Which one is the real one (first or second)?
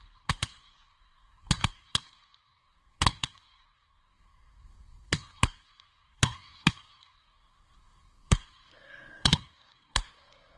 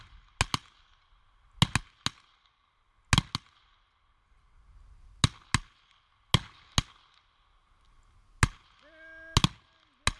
second